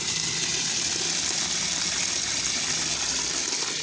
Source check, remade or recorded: recorded